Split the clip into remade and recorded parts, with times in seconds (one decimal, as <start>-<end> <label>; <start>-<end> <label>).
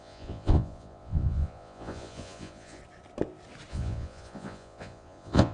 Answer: 0.0-2.8 remade; 2.8-3.7 recorded; 3.7-5.5 remade